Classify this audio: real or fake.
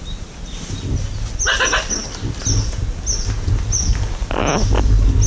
real